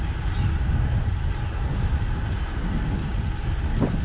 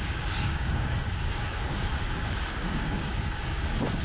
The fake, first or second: second